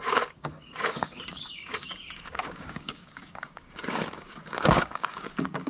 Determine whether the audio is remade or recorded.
remade